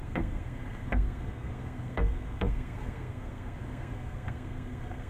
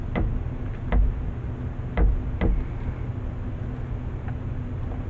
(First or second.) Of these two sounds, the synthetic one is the first